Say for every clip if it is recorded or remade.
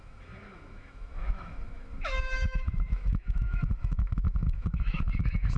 remade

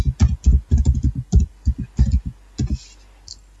recorded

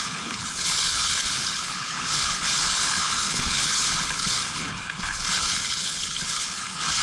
remade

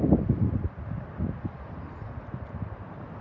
recorded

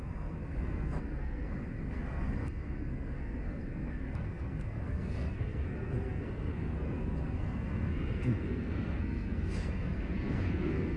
remade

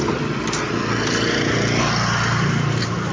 recorded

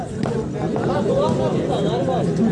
recorded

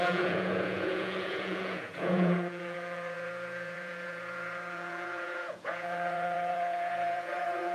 remade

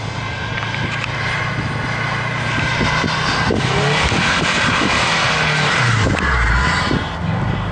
recorded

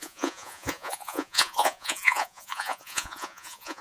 remade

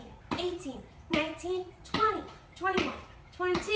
remade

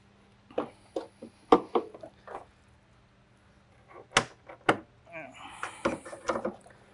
recorded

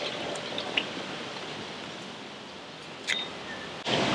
recorded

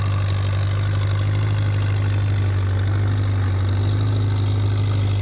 recorded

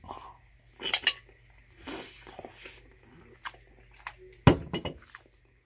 recorded